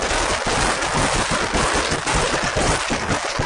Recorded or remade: recorded